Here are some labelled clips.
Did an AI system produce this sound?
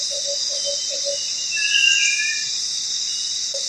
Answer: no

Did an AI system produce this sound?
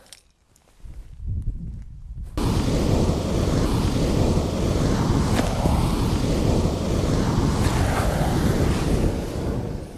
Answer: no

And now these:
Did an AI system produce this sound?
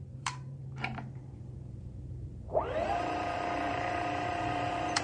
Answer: yes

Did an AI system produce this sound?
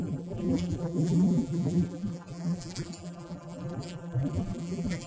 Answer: yes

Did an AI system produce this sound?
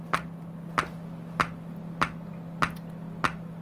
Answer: no